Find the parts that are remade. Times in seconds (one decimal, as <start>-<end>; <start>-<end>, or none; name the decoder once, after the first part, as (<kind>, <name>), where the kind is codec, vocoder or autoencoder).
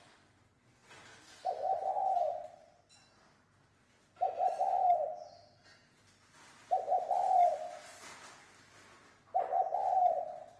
none